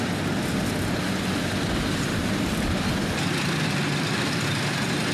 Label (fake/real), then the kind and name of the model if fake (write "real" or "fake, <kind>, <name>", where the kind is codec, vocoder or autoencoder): real